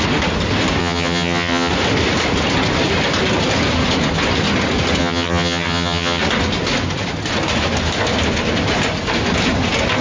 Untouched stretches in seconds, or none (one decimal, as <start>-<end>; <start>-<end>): 0.0-0.8; 1.7-5.0; 6.2-10.0